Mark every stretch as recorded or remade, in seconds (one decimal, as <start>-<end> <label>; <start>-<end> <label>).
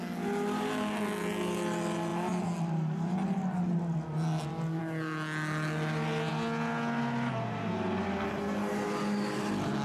0.0-9.8 recorded